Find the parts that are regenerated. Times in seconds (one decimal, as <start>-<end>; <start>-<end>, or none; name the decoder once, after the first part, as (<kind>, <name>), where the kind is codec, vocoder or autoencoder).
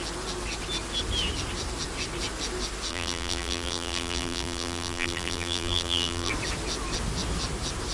2.9-6.3 (vocoder, BigVGAN v2)